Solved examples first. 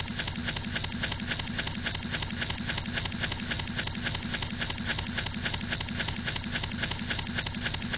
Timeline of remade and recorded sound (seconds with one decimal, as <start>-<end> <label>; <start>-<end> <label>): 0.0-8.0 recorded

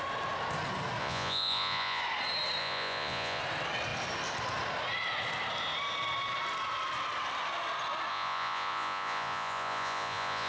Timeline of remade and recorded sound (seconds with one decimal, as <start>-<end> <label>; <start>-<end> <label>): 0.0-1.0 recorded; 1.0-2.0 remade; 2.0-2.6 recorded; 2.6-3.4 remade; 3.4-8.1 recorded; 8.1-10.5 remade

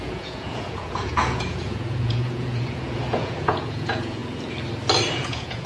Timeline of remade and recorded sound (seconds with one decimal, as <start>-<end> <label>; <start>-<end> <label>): 0.0-4.2 remade; 4.2-5.1 recorded; 5.1-5.7 remade

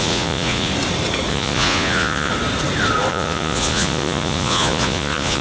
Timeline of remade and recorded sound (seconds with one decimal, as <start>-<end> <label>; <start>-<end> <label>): 0.0-0.7 remade; 0.7-1.3 recorded; 1.3-2.3 remade; 2.3-3.1 recorded; 3.1-5.4 remade

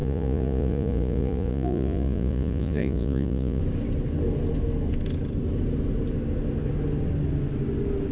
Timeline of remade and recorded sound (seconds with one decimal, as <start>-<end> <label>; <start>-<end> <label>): 0.0-3.6 remade; 3.6-8.1 recorded

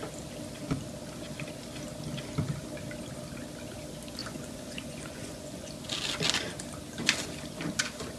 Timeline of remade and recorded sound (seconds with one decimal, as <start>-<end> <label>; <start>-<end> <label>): 0.0-4.2 recorded; 4.2-5.7 remade; 5.7-8.2 recorded

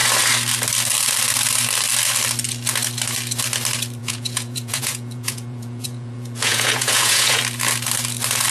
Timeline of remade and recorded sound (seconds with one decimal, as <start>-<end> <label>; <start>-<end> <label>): 0.0-4.0 recorded; 4.0-7.4 remade; 7.4-8.5 recorded

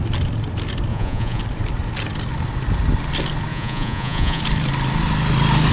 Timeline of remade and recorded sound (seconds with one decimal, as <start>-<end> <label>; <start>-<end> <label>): 0.0-0.9 recorded; 0.9-1.4 remade; 1.4-3.5 recorded; 3.5-4.4 remade; 4.4-5.7 recorded